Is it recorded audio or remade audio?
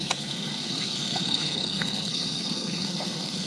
remade